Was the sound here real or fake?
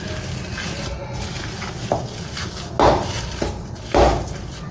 real